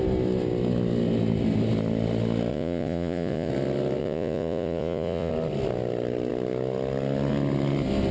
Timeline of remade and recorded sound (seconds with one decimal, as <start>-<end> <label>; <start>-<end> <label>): 0.0-2.5 recorded; 2.5-3.5 remade; 3.5-4.0 recorded; 4.0-5.3 remade; 5.3-8.1 recorded

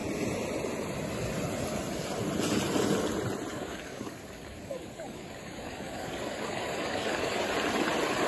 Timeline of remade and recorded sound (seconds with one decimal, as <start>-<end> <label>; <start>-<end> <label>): 0.0-3.5 recorded; 3.5-7.4 remade; 7.4-8.3 recorded

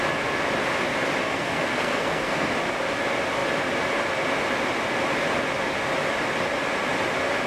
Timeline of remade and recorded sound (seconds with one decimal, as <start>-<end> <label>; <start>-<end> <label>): 0.0-1.2 recorded; 1.2-2.5 remade; 2.5-7.5 recorded

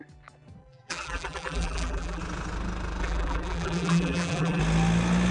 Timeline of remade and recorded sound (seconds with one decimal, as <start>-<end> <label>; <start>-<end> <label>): 0.0-0.6 recorded; 0.6-2.2 remade; 2.2-3.0 recorded; 3.0-4.6 remade; 4.6-5.3 recorded